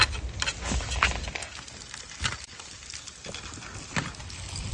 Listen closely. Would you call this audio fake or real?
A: real